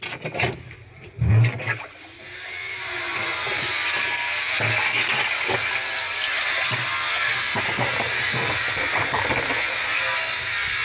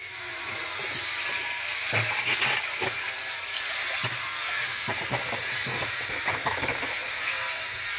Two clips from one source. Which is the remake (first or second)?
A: second